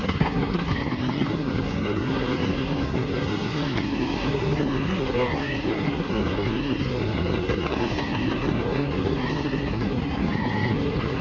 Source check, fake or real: fake